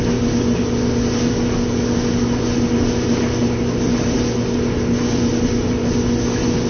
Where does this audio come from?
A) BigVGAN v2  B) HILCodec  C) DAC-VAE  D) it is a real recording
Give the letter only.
D